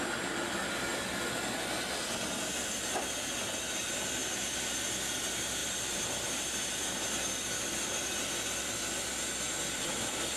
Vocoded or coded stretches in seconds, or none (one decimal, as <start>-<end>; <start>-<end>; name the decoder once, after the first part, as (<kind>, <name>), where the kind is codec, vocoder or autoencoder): 4.2-4.8 (vocoder, BigVGAN v2); 5.6-6.7